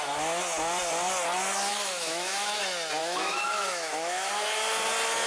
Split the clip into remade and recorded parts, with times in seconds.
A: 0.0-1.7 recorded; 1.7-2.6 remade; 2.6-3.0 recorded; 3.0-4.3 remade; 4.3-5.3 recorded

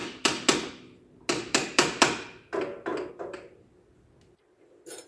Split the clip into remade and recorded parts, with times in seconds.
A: 0.0-5.1 recorded

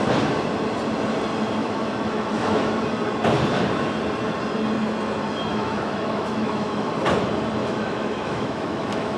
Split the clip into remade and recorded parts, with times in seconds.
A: 0.0-1.6 recorded; 1.6-2.8 remade; 2.8-5.5 recorded; 5.5-6.9 remade; 6.9-7.6 recorded; 7.6-9.2 remade

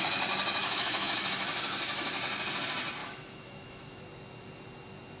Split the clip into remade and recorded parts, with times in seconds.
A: 0.0-0.6 recorded; 0.6-2.1 remade; 2.1-3.0 recorded; 3.0-4.0 remade; 4.0-5.2 recorded

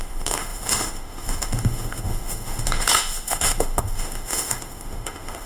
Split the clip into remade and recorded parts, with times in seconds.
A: 0.0-5.5 remade

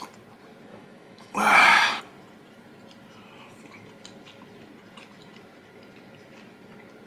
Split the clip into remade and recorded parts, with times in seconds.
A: 0.0-0.7 recorded; 0.7-2.0 remade; 2.0-7.1 recorded

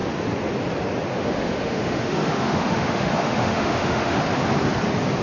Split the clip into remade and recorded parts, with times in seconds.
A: 0.0-1.1 recorded; 1.1-4.2 remade; 4.2-5.2 recorded